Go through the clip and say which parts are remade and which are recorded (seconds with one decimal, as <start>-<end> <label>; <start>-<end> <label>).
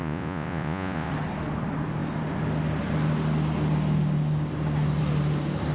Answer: 0.0-1.1 remade; 1.1-5.7 recorded